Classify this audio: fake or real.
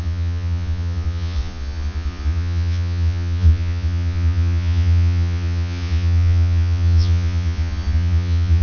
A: fake